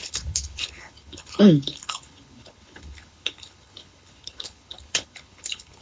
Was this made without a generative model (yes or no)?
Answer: no